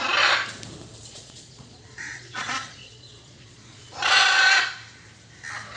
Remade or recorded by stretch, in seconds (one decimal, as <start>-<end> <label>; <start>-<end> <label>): 0.0-1.1 recorded; 1.1-4.6 remade; 4.6-5.8 recorded